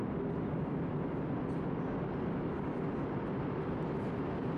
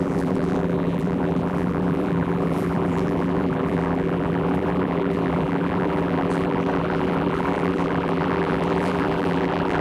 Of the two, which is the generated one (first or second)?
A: second